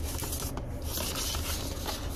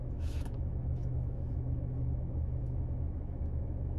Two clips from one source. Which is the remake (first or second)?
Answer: second